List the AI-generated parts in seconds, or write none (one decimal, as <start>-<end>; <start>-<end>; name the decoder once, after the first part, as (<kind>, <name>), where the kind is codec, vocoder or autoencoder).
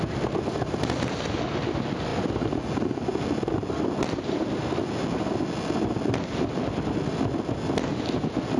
none